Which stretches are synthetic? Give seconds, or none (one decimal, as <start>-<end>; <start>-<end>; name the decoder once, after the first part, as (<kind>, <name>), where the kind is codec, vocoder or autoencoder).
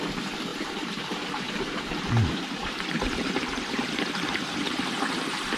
0.5-3.3 (vocoder, BigVGAN v2)